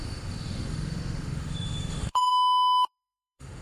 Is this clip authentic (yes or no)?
no